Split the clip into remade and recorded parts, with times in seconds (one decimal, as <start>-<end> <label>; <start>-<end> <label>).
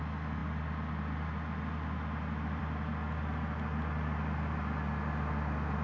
0.0-5.8 recorded